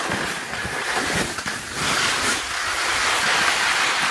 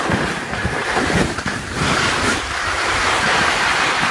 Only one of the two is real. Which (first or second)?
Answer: first